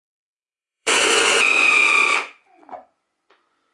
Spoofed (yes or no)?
yes